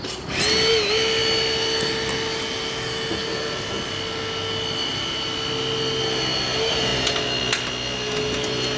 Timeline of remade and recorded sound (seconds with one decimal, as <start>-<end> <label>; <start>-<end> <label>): 0.0-8.8 recorded